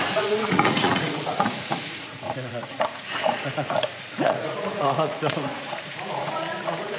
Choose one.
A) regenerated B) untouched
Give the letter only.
A